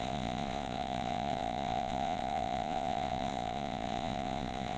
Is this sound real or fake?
fake